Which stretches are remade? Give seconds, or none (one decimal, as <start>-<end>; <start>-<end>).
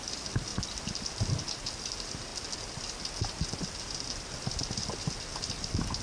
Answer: none